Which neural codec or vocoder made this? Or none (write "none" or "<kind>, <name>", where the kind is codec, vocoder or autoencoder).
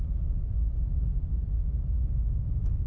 none